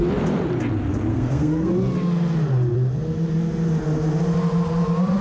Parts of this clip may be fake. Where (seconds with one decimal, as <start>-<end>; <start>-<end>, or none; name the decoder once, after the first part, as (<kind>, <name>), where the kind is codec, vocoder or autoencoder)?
1.1-1.7 (codec, SNAC)